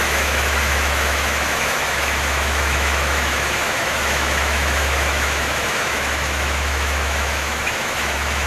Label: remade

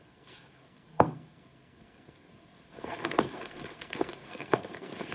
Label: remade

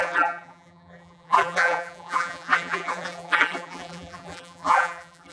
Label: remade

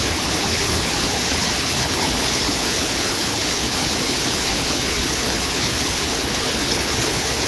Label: remade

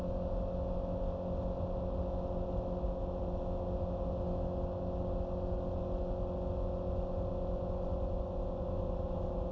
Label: recorded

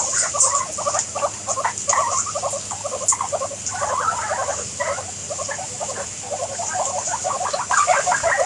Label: recorded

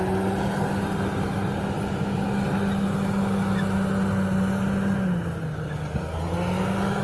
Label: recorded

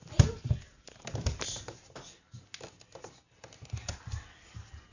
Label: recorded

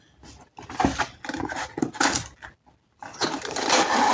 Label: recorded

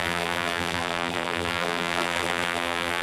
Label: remade